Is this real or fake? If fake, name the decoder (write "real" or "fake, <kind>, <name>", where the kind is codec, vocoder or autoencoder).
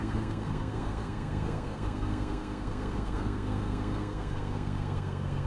fake, codec, SNAC